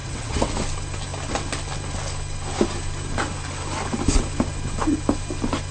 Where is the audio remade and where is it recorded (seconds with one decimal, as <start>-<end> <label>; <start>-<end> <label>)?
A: 0.0-0.5 remade; 0.5-5.7 recorded